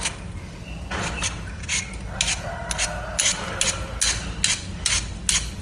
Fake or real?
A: real